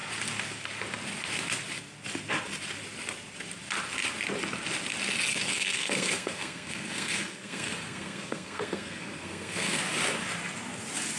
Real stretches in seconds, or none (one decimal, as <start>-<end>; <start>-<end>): 0.0-5.3; 9.8-11.2